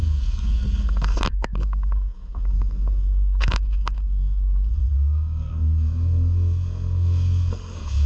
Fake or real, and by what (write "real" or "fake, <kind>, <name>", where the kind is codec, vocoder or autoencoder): fake, codec, SNAC